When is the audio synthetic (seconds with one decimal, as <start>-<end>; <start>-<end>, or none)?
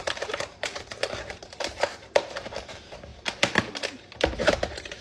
0.0-3.1; 4.4-5.0